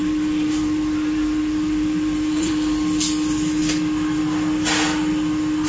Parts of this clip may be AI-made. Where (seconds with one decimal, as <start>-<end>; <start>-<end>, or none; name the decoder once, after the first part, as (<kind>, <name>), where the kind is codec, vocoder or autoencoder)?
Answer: 0.0-2.5 (vocoder, BigVGAN v2)

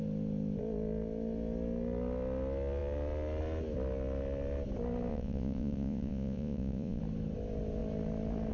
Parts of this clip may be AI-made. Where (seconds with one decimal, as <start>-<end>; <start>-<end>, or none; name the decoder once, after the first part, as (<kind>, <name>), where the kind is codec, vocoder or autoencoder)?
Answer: 5.1-7.0 (vocoder, Vocos)

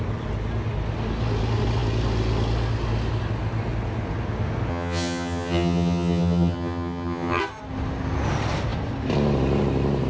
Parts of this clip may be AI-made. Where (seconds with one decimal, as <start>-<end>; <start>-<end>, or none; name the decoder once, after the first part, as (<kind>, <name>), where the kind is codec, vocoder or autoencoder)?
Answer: 4.7-7.4 (vocoder, HiFi-GAN)

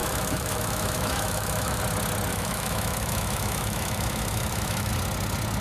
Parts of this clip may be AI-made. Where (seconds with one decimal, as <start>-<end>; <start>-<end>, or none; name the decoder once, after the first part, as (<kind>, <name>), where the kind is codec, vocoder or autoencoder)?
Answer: 0.0-1.8 (autoencoder, DAC-VAE); 2.3-4.9

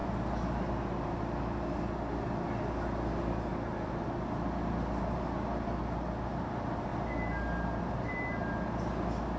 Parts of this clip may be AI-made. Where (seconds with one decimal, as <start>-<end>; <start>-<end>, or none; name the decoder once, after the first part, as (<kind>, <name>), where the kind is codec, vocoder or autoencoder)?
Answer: none

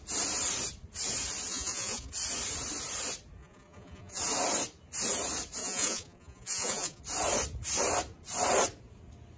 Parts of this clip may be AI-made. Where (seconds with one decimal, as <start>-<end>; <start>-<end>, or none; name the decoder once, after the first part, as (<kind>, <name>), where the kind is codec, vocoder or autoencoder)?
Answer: 1.5-2.1 (vocoder, Vocos); 3.4-4.2; 5.6-7.0